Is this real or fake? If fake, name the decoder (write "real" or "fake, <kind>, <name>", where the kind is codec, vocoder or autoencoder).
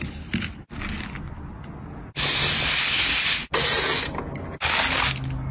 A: real